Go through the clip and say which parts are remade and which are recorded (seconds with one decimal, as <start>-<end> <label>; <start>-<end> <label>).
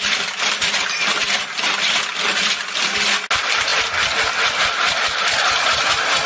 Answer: 0.0-1.4 remade; 1.4-6.3 recorded